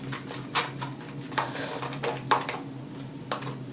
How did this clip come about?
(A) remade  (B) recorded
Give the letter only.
B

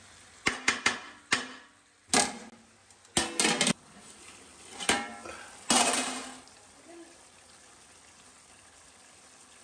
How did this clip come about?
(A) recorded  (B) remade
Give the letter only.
A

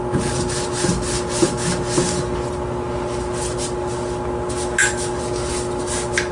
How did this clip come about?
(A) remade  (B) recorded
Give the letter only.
B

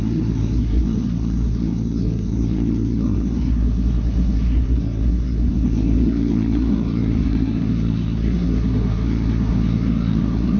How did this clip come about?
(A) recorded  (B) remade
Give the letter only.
B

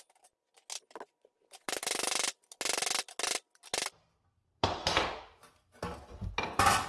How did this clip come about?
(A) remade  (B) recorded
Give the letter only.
B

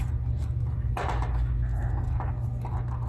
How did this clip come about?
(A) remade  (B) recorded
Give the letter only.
B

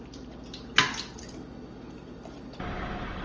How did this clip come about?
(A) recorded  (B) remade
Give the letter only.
A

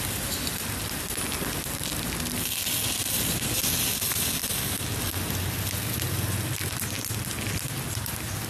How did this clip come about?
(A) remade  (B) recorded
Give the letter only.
B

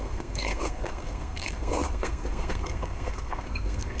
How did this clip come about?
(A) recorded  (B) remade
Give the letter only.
B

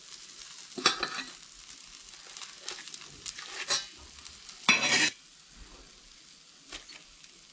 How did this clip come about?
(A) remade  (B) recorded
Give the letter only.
B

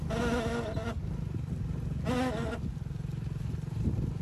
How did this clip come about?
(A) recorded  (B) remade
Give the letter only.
A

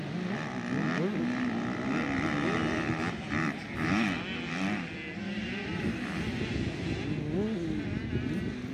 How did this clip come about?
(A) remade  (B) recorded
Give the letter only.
B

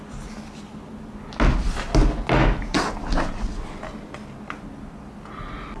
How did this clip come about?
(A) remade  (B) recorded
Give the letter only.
B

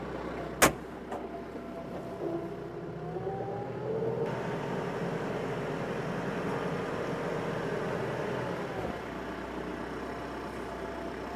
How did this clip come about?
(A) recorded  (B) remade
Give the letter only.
A